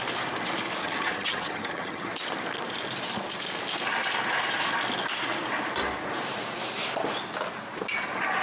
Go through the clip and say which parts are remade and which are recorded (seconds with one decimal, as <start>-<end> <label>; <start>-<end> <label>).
0.0-0.8 recorded; 0.8-2.1 remade; 2.1-8.4 recorded

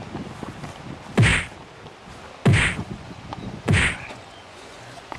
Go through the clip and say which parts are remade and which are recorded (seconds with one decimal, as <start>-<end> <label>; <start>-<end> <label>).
0.0-2.5 recorded; 2.5-5.2 remade

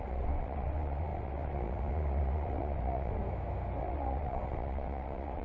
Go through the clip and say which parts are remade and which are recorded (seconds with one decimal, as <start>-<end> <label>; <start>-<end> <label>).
0.0-3.2 remade; 3.2-3.8 recorded; 3.8-5.4 remade

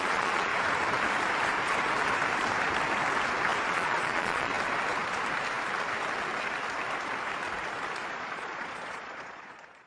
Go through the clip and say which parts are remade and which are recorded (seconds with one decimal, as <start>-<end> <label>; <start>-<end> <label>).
0.0-0.5 remade; 0.5-3.7 recorded; 3.7-4.5 remade; 4.5-8.1 recorded; 8.1-9.9 remade

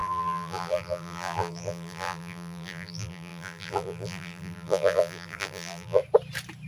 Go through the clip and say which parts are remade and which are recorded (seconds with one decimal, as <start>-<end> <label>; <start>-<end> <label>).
0.0-6.0 remade; 6.0-6.7 recorded

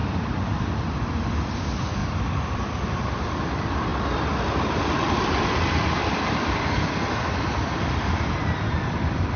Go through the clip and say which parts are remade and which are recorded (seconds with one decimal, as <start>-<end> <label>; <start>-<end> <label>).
0.0-3.9 remade; 3.9-4.5 recorded; 4.5-9.4 remade